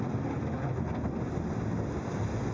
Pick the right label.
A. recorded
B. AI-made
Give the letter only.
A